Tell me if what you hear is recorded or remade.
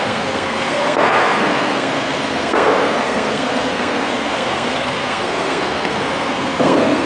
remade